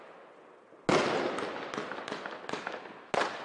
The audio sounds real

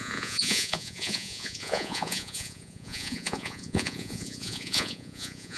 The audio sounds fake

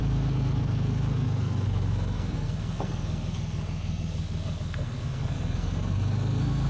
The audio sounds fake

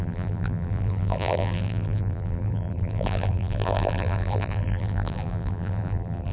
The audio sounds fake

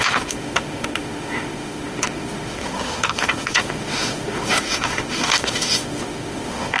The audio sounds fake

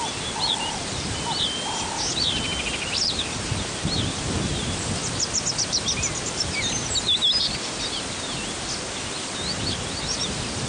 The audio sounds real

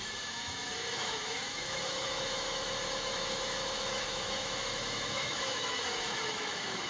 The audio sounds fake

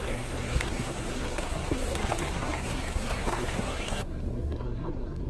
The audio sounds fake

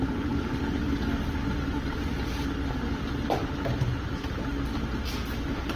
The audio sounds real